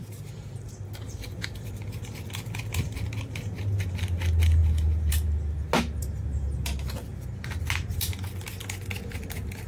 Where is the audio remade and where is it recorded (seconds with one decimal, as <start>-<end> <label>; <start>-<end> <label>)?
0.0-9.7 recorded